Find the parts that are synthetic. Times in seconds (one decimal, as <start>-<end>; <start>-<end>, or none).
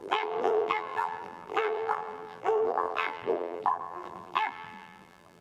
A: 0.0-5.4